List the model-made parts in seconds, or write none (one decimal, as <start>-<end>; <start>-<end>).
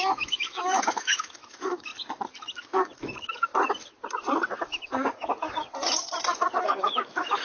0.0-1.9; 2.6-3.5; 4.6-5.3; 6.6-7.4